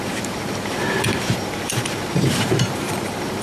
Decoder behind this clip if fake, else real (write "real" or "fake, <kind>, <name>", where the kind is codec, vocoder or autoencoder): fake, vocoder, BigVGAN v2